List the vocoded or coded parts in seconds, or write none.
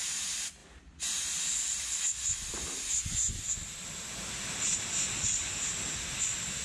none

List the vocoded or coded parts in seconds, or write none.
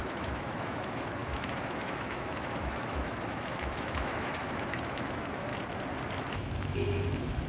0.0-5.5; 6.3-7.5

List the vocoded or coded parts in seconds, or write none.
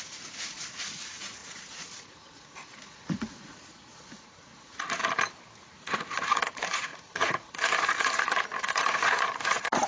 0.0-5.0; 5.6-9.9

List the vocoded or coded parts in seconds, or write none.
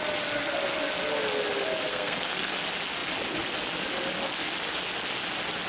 1.9-2.5